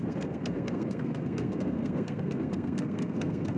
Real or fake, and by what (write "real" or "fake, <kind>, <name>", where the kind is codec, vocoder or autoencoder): fake, codec, SNAC